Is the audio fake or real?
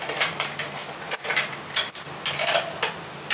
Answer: real